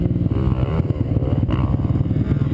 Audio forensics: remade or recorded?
recorded